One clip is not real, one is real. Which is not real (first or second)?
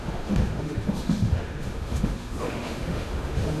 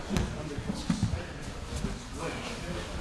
first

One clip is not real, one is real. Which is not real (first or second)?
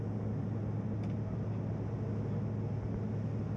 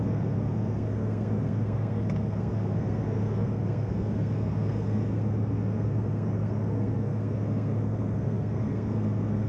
second